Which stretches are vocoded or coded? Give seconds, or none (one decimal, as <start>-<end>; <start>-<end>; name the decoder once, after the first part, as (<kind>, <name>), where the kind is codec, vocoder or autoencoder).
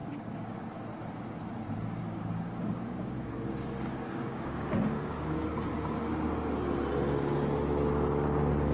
0.0-0.8 (codec, DAC); 2.0-5.7